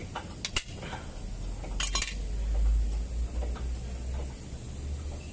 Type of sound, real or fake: real